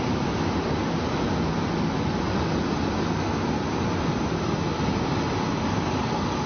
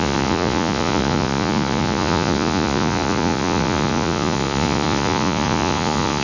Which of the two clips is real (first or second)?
first